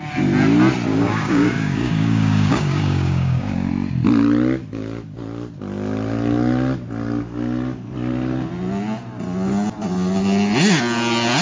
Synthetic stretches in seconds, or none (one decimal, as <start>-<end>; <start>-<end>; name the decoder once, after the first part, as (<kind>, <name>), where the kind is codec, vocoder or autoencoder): 0.9-3.7 (codec, DAC)